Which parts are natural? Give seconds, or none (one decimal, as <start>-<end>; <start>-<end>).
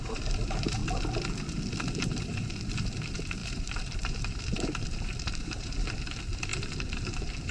0.8-2.0